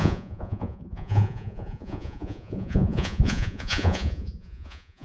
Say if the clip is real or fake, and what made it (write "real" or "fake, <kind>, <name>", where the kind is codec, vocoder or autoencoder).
fake, vocoder, Vocos